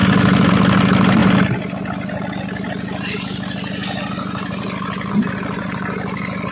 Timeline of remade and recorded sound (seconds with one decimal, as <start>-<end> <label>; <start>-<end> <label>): 0.0-6.5 recorded